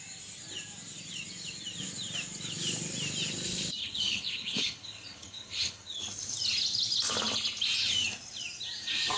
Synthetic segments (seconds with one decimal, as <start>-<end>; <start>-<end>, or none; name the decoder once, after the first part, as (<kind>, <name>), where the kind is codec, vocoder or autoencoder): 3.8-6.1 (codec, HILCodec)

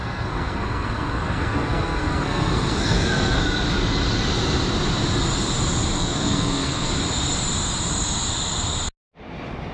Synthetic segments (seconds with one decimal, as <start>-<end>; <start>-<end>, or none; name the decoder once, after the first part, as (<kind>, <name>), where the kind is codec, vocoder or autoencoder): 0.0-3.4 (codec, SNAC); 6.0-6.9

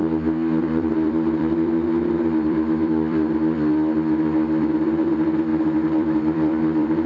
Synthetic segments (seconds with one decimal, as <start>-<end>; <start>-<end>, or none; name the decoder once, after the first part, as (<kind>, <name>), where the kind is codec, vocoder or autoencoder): 0.6-7.1 (vocoder, BigVGAN v2)

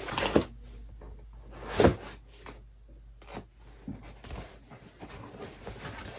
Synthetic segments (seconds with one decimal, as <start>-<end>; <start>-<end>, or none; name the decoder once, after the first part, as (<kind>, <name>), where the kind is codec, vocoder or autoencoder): none

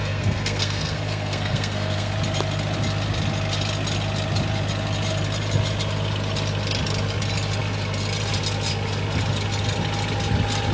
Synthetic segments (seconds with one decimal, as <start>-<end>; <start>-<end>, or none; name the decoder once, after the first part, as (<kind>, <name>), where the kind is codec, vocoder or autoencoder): 0.0-2.1 (codec, SNAC)

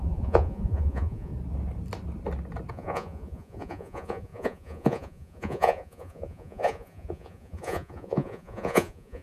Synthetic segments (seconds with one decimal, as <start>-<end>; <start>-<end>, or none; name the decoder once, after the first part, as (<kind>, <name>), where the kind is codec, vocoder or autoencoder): 0.0-1.3 (vocoder, Vocos); 2.7-9.2

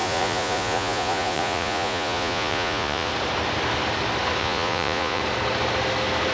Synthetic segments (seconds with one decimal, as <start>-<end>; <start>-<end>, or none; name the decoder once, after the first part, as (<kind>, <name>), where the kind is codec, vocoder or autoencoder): 0.0-3.1 (vocoder, Vocos); 4.4-5.2